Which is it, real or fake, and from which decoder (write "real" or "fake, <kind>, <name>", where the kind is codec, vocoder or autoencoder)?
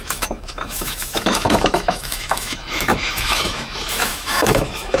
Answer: fake, autoencoder, DAC-VAE